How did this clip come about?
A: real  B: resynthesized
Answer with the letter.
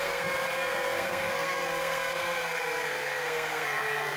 B